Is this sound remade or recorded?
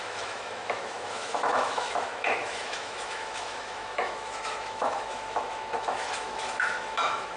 remade